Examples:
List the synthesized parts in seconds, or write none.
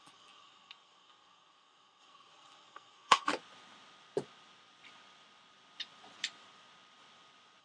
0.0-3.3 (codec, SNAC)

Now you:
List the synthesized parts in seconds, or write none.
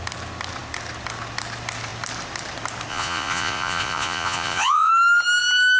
2.9-4.9 (vocoder, Vocos)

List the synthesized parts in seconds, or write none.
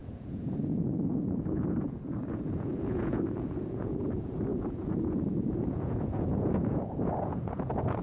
0.0-8.0 (vocoder, Vocos)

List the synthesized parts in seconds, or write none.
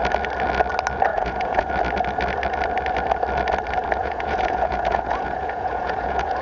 1.1-1.7 (vocoder, Vocos); 4.0-6.4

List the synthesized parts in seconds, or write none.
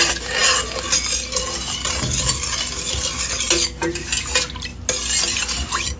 none